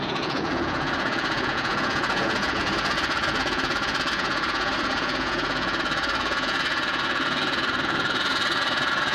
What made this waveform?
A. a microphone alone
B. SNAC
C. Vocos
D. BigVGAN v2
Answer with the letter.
C